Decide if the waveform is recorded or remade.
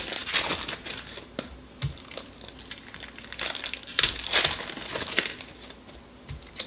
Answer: recorded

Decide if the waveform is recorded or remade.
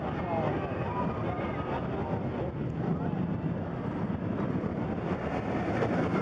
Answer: recorded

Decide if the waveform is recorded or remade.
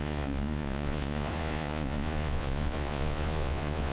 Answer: remade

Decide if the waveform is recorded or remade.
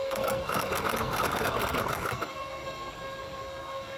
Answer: remade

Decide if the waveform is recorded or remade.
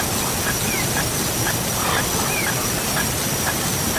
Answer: recorded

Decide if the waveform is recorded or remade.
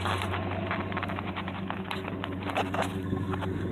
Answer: recorded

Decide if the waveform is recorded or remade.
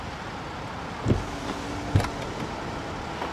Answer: recorded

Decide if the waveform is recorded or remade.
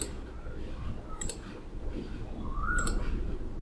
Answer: recorded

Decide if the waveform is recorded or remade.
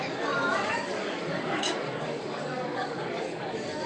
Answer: remade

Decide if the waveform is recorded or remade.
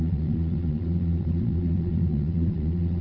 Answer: remade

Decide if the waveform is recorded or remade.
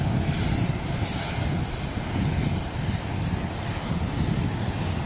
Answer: recorded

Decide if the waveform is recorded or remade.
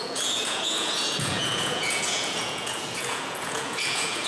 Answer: remade